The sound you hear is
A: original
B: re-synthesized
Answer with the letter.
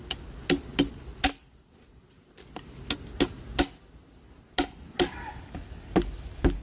A